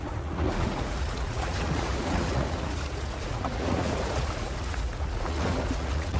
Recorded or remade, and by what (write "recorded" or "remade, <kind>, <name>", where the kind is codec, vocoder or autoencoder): remade, vocoder, Vocos